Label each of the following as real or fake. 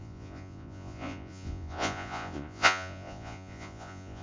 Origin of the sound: fake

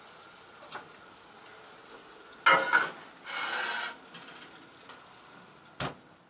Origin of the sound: real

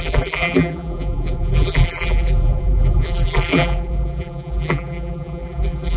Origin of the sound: fake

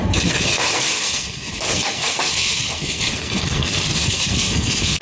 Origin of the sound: fake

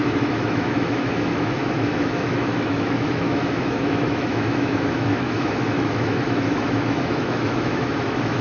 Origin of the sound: fake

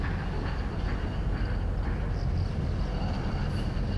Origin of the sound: real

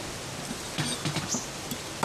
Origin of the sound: real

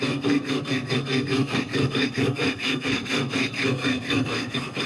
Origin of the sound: fake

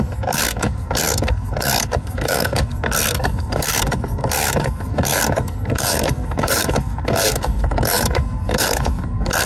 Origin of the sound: fake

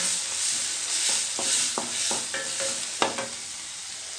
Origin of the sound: real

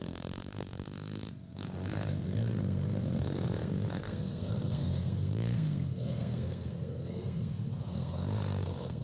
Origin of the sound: fake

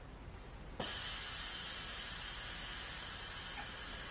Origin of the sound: real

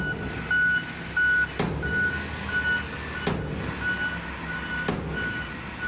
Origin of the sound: real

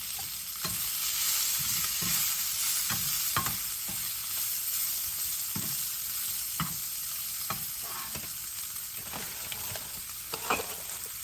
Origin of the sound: real